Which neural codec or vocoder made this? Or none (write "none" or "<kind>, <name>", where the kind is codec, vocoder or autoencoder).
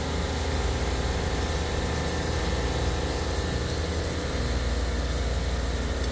none